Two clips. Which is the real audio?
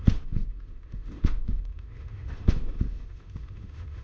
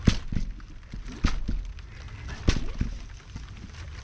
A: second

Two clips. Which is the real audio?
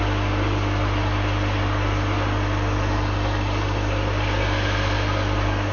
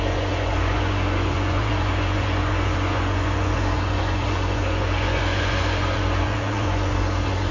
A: first